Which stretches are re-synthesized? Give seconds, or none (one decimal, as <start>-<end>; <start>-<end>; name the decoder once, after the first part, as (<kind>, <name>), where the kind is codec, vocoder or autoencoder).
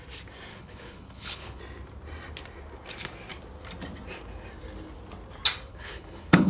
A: 0.5-1.6 (codec, HILCodec); 5.7-6.5